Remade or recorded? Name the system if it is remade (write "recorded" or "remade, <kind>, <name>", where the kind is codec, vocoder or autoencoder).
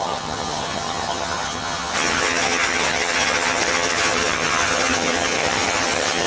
remade, vocoder, HiFi-GAN